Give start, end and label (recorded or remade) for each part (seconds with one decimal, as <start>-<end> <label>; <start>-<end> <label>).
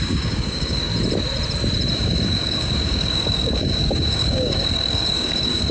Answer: 0.0-0.9 remade; 0.9-1.9 recorded; 1.9-5.7 remade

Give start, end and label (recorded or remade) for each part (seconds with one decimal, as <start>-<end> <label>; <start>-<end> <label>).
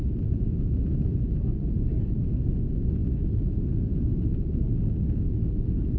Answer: 0.0-6.0 recorded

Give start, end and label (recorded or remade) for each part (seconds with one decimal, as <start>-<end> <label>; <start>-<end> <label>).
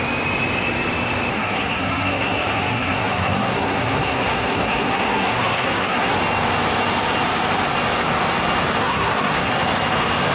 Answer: 0.0-1.3 recorded; 1.3-6.2 remade; 6.2-8.8 recorded; 8.8-9.5 remade; 9.5-10.3 recorded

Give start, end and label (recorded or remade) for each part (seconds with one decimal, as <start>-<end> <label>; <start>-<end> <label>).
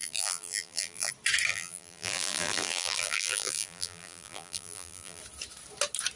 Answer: 0.0-1.1 remade; 1.1-1.5 recorded; 1.5-5.2 remade; 5.2-6.2 recorded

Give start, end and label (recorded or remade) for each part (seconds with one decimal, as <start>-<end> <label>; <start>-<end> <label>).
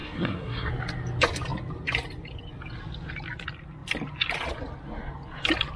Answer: 0.0-0.7 remade; 0.7-5.8 recorded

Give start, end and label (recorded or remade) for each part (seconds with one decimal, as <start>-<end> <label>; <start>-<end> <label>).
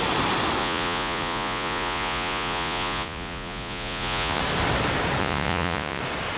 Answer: 0.0-0.6 recorded; 0.6-4.4 remade; 4.4-5.2 recorded; 5.2-6.0 remade; 6.0-6.4 recorded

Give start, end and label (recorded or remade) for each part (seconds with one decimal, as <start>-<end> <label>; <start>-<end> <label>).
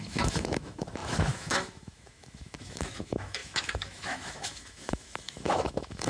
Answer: 0.0-6.1 remade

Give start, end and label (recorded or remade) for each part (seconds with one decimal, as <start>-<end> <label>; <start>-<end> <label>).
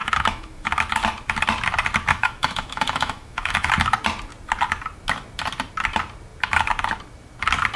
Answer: 0.0-0.7 remade; 0.7-2.1 recorded; 2.1-3.7 remade; 3.7-7.8 recorded